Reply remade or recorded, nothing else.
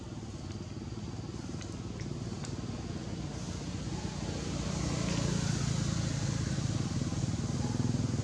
recorded